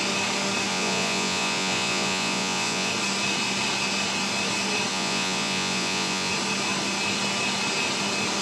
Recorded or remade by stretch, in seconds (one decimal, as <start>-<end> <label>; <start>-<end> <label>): 0.0-0.7 recorded; 0.7-2.9 remade; 2.9-4.9 recorded; 4.9-6.3 remade; 6.3-8.4 recorded